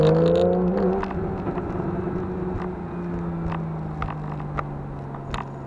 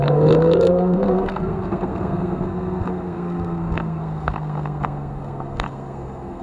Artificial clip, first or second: second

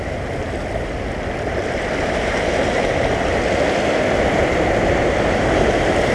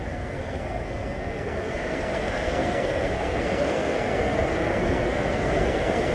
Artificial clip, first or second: second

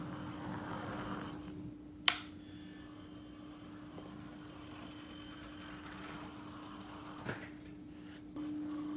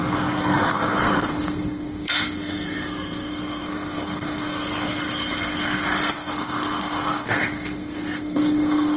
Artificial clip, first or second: second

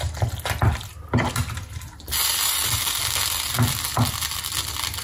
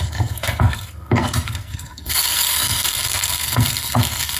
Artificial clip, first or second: second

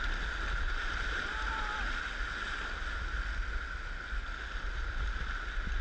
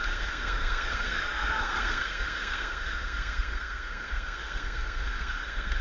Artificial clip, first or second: second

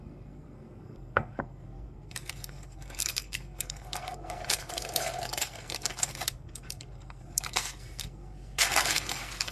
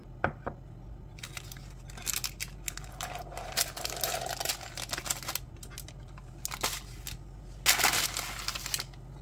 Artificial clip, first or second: first